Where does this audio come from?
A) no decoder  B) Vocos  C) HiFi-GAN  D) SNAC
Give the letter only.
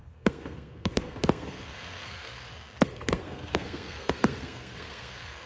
D